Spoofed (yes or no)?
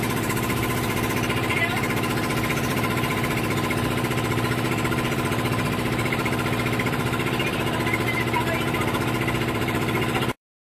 yes